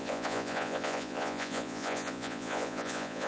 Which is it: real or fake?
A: fake